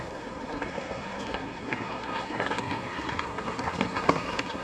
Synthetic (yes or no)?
yes